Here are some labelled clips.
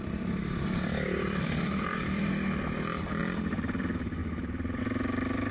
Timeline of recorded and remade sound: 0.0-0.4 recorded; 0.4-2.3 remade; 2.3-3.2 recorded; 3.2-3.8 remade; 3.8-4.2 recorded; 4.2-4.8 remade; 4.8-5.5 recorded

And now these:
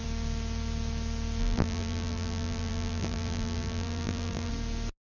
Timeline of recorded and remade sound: 0.0-1.4 recorded; 1.4-4.5 remade; 4.5-5.1 recorded